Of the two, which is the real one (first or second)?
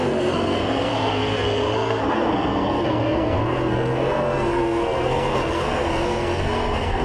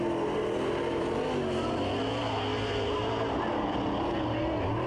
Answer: second